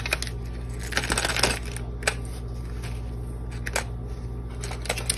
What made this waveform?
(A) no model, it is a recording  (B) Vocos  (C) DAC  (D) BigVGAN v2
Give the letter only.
A